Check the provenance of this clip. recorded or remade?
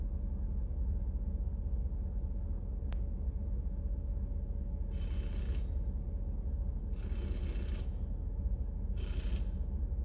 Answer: recorded